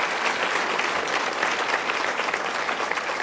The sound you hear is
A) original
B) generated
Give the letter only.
A